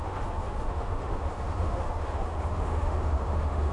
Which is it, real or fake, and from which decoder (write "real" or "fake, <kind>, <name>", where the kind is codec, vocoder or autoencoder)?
fake, autoencoder, DAC-VAE